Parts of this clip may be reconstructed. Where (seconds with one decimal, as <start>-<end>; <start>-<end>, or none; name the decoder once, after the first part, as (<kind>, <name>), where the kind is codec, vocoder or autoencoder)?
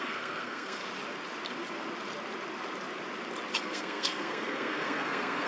0.0-0.8 (codec, SNAC); 3.6-5.5